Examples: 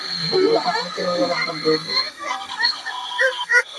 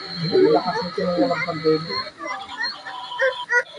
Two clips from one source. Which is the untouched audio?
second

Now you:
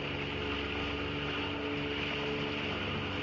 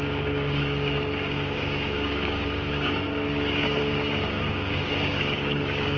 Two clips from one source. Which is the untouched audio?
first